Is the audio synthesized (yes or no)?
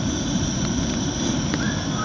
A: no